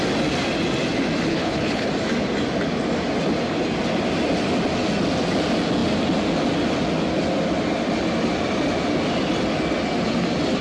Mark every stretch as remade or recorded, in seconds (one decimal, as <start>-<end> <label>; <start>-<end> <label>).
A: 0.0-1.3 recorded; 1.3-1.9 remade; 1.9-10.6 recorded